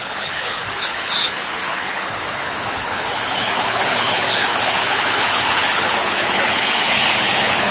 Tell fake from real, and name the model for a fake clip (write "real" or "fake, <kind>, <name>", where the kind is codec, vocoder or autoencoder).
fake, codec, HILCodec